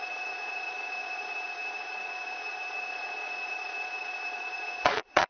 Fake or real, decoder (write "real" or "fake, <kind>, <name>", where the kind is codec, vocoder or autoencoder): fake, vocoder, Vocos